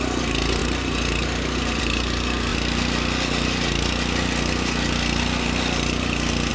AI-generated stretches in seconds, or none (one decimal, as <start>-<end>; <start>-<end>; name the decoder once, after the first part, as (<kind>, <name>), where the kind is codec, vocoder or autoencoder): 0.6-1.8 (vocoder, BigVGAN v2)